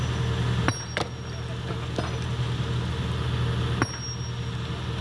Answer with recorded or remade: recorded